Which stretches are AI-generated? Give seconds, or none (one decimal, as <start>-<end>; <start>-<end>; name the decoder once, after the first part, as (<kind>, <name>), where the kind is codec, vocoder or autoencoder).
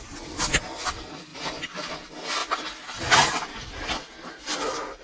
none